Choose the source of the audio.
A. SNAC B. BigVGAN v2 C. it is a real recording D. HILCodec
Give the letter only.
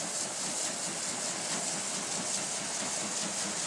C